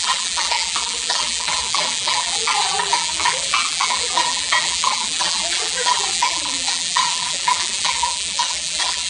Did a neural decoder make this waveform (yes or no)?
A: yes